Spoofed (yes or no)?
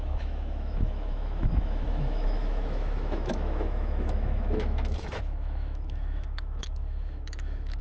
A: yes